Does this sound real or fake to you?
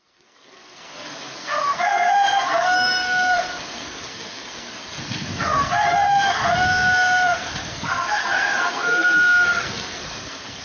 fake